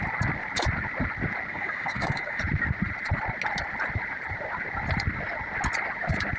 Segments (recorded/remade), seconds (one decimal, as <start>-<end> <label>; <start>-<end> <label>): 0.0-1.5 recorded; 1.5-2.4 remade; 2.4-6.4 recorded